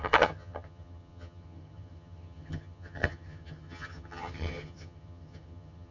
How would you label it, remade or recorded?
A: remade